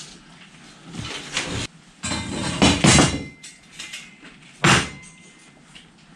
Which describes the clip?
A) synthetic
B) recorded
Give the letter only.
B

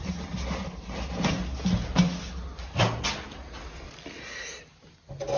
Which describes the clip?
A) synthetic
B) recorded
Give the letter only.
B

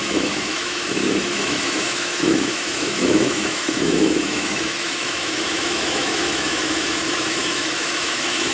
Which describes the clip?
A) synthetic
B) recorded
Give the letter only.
A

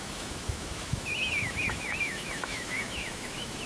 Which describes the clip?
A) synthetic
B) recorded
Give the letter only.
A